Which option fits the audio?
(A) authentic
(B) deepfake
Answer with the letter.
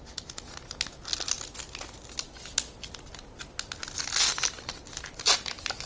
A